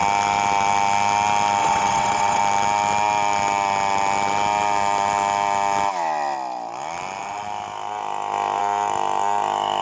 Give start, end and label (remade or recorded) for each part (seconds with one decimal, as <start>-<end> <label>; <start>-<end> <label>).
0.0-1.6 recorded; 1.6-2.4 remade; 2.4-9.8 recorded